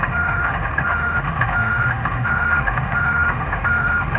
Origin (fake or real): fake